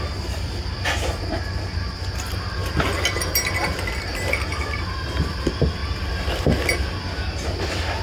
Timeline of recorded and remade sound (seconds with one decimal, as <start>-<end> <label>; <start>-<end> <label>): 0.0-8.0 recorded